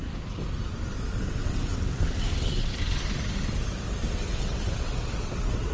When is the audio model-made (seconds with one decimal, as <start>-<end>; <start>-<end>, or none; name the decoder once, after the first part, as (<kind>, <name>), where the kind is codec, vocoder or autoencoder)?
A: 1.4-2.8 (vocoder, WaveNeXt); 4.0-5.7